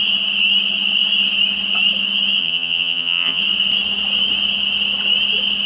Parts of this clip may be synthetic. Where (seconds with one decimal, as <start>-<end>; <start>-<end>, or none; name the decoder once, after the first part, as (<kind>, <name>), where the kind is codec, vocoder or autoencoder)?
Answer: 2.4-3.4 (vocoder, HiFi-GAN)